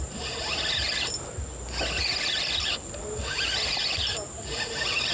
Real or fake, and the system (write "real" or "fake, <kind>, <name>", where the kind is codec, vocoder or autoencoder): real